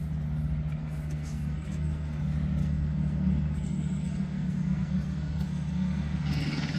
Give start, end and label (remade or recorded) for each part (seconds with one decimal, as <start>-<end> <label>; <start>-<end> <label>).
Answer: 0.0-0.8 recorded; 0.8-2.2 remade; 2.2-2.6 recorded; 2.6-6.8 remade